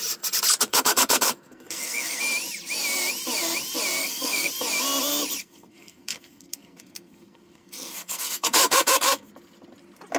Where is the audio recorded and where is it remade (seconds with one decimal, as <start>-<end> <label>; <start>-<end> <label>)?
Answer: 0.0-0.7 recorded; 0.7-2.2 remade; 2.2-4.0 recorded; 4.0-4.5 remade; 4.5-5.4 recorded; 5.4-9.3 remade; 9.3-10.2 recorded